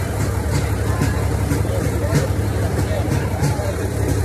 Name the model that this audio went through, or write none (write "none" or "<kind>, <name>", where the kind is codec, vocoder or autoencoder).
vocoder, BigVGAN v2